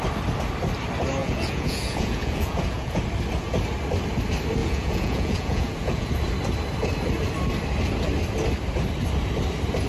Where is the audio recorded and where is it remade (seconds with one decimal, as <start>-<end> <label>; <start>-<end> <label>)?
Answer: 0.0-1.2 recorded; 1.2-3.0 remade; 3.0-4.6 recorded; 4.6-6.1 remade; 6.1-9.9 recorded